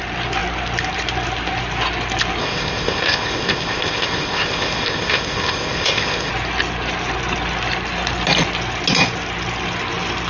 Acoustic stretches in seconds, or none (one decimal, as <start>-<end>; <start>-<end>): 0.0-2.4; 6.3-10.3